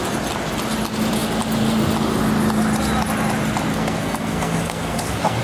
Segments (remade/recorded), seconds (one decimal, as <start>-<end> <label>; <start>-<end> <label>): 0.0-3.7 recorded; 3.7-5.4 remade